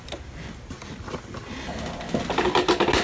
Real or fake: real